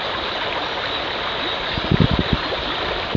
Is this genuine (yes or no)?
yes